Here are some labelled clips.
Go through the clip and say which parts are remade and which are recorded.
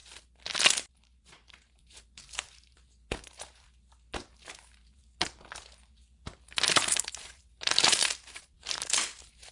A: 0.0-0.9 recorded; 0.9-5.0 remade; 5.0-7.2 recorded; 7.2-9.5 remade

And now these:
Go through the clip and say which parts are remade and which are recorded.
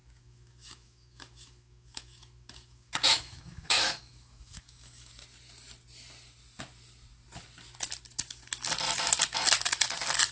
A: 0.0-5.1 remade; 5.1-10.3 recorded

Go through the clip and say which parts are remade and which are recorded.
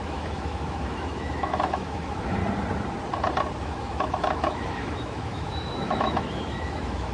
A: 0.0-2.4 remade; 2.4-3.6 recorded; 3.6-7.1 remade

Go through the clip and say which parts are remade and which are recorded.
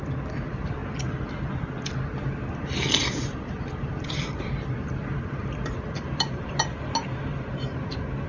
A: 0.0-3.0 recorded; 3.0-6.6 remade; 6.6-8.3 recorded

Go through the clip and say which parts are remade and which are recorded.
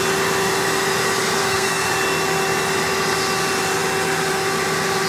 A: 0.0-1.4 recorded; 1.4-1.9 remade; 1.9-5.1 recorded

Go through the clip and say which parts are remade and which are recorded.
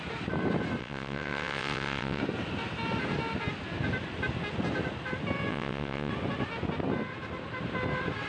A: 0.0-0.8 recorded; 0.8-2.2 remade; 2.2-5.5 recorded; 5.5-6.1 remade; 6.1-8.3 recorded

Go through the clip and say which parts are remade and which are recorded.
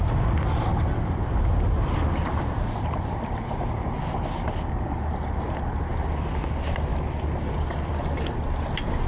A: 0.0-9.1 recorded